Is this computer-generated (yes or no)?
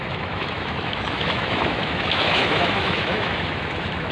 yes